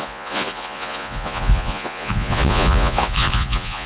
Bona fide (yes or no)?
no